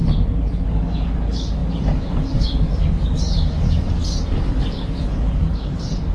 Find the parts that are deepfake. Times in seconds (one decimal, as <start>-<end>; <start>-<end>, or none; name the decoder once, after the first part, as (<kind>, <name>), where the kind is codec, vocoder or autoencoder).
0.6-6.1 (codec, DAC)